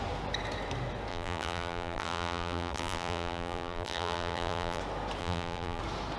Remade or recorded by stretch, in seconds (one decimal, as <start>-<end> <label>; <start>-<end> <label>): 0.0-1.1 recorded; 1.1-4.8 remade; 4.8-5.2 recorded; 5.2-5.8 remade; 5.8-6.2 recorded